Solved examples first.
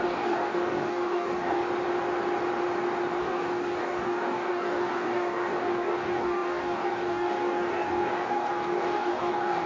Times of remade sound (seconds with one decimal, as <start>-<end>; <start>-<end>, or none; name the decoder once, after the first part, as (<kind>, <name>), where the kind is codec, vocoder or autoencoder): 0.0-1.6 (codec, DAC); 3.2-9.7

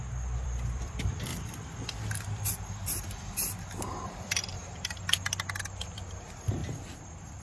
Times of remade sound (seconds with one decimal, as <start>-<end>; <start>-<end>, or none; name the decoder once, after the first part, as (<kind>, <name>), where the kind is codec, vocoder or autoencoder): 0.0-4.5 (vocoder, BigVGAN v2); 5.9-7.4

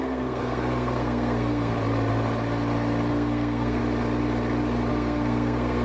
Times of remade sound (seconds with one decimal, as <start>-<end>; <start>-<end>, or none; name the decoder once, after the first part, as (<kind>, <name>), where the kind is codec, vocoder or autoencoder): 0.0-1.7 (codec, SNAC); 3.1-3.8; 4.9-5.8